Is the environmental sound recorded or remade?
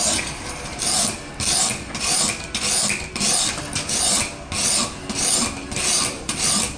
recorded